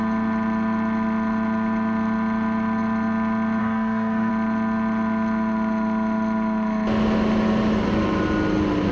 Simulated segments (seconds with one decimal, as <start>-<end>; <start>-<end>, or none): 3.6-4.3